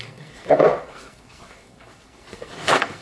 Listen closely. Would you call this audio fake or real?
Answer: fake